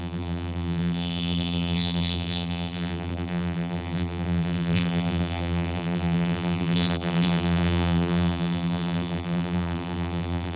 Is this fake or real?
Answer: fake